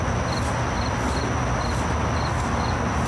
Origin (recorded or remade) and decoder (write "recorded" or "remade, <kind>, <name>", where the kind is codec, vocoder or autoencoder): recorded